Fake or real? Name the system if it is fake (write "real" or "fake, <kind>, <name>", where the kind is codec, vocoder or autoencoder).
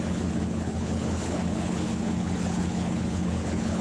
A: fake, codec, HILCodec